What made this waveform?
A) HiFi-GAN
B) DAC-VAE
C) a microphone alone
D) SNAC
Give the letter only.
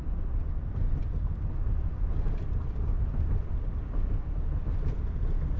C